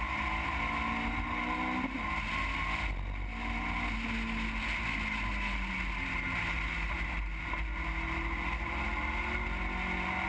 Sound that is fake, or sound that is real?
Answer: real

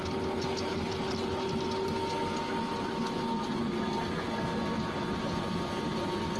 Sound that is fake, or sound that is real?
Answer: real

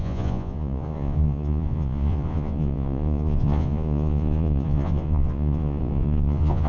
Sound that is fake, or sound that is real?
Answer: fake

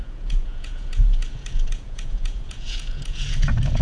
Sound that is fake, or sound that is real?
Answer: fake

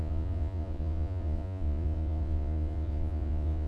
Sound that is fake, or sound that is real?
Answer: fake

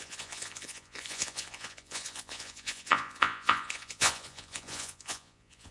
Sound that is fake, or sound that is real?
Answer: fake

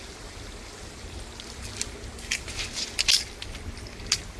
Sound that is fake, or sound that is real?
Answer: real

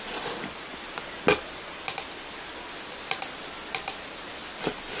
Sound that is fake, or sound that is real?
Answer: real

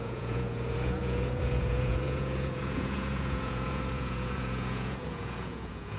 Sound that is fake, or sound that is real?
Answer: fake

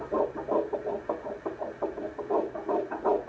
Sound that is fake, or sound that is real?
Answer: real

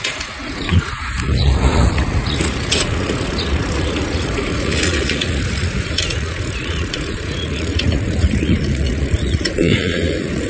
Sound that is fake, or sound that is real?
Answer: fake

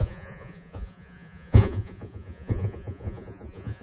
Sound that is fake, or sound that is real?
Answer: fake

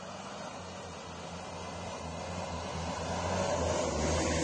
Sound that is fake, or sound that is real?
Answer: real